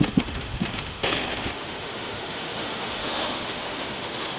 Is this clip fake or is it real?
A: fake